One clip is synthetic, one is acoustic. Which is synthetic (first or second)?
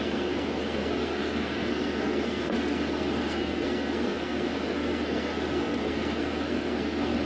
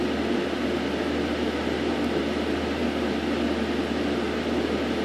first